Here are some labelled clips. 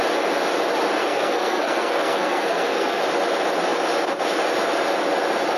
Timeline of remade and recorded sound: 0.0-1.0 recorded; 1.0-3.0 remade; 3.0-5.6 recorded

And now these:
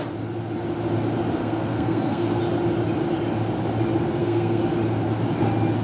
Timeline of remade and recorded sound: 0.0-1.4 recorded; 1.4-2.4 remade; 2.4-4.2 recorded; 4.2-4.7 remade; 4.7-5.8 recorded